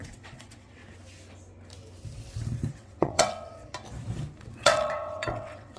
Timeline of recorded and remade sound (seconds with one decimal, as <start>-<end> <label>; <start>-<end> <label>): 0.0-0.8 remade; 0.8-2.7 recorded; 2.7-3.6 remade; 3.6-4.4 recorded; 4.4-5.8 remade